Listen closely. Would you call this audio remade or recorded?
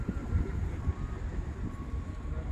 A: recorded